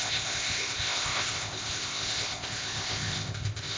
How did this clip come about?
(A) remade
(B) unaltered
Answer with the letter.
A